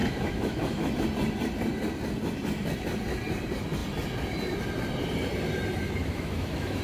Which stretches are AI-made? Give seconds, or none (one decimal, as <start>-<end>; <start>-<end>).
0.0-0.9; 6.0-6.8